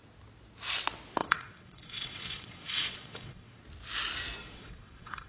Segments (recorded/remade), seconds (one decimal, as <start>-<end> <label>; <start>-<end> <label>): 0.0-1.2 recorded; 1.2-3.6 remade; 3.6-4.4 recorded; 4.4-5.3 remade